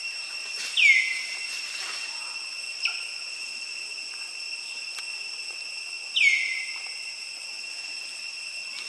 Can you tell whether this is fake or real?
real